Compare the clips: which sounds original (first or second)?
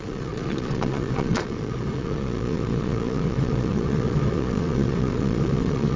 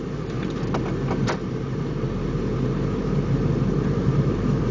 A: second